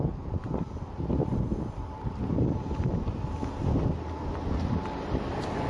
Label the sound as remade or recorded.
recorded